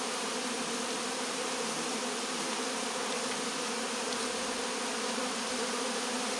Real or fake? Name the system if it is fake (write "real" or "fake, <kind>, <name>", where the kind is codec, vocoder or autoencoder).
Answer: real